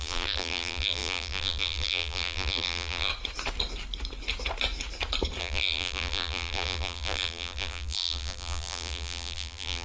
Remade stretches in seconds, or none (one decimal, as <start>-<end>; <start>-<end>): 0.0-3.1; 5.4-9.8